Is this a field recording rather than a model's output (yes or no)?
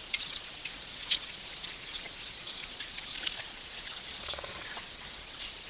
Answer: no